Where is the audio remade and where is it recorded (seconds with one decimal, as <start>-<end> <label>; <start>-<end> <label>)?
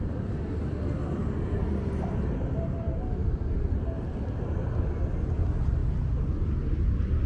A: 0.0-7.3 recorded